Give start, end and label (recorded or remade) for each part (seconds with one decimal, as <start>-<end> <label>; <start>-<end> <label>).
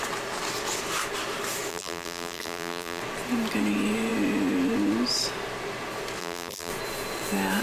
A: 0.0-1.7 recorded; 1.7-3.0 remade; 3.0-6.2 recorded; 6.2-6.7 remade; 6.7-7.6 recorded